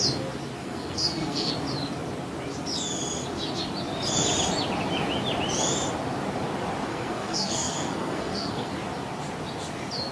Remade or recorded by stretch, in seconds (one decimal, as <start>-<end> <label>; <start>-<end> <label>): 0.0-0.6 recorded; 0.6-1.5 remade; 1.5-6.9 recorded; 6.9-8.7 remade; 8.7-10.1 recorded